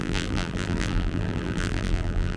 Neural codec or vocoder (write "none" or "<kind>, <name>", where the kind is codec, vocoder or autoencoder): vocoder, BigVGAN v2